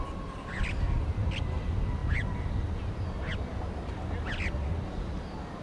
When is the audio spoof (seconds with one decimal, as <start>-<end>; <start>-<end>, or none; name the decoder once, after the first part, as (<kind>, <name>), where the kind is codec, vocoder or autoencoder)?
none

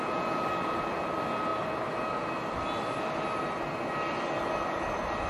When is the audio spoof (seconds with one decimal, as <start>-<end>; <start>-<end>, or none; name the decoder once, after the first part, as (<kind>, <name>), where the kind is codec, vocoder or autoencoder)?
none

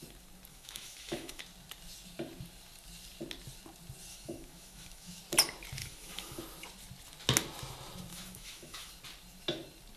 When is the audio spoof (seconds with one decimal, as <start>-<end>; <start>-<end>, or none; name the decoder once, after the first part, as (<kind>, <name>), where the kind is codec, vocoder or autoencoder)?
0.5-1.4 (autoencoder, DAC-VAE); 4.1-5.2; 5.8-6.4; 8.1-8.9

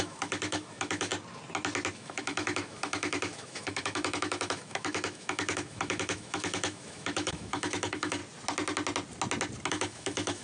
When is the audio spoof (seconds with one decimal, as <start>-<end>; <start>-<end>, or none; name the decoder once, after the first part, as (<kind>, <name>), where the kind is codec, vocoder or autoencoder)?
0.0-1.1 (autoencoder, DAC-VAE); 1.9-8.2; 9.7-10.4

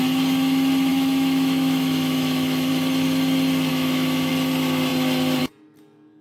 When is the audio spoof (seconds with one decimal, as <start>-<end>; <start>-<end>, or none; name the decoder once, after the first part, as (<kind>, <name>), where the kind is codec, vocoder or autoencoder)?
0.9-2.7 (autoencoder, DAC-VAE); 3.7-4.3

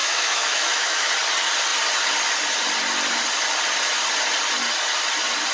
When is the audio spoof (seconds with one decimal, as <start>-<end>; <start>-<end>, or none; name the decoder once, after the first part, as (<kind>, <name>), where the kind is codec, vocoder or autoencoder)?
0.0-1.1 (autoencoder, DAC-VAE)